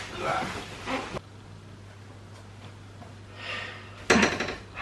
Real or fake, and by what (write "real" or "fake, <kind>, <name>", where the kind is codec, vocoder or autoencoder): real